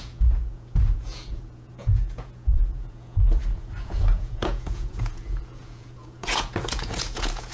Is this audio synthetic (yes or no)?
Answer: yes